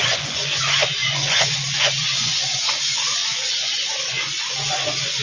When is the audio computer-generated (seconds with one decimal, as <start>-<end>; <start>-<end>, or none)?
0.0-5.2